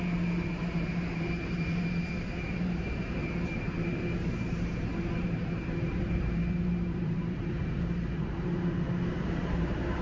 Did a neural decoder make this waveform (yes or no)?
yes